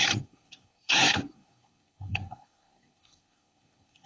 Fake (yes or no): yes